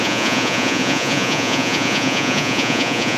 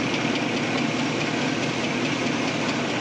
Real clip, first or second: second